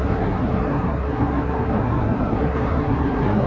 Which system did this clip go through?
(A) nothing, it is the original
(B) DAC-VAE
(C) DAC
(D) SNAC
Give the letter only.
D